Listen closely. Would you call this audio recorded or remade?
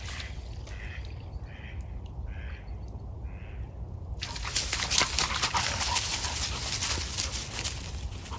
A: recorded